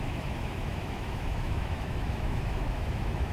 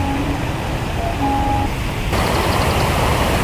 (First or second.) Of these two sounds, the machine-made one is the first